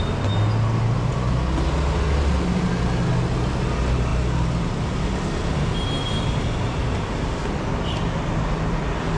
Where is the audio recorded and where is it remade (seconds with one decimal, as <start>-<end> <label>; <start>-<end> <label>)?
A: 0.0-9.2 recorded